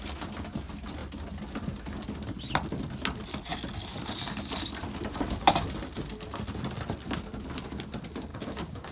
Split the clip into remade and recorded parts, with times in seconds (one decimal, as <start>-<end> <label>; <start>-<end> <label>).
0.0-8.3 recorded; 8.3-8.9 remade